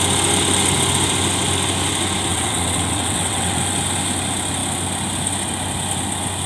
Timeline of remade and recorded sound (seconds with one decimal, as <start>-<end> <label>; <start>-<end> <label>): 0.0-2.3 recorded; 2.3-3.6 remade; 3.6-6.5 recorded